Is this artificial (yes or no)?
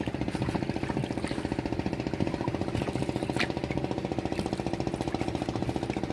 no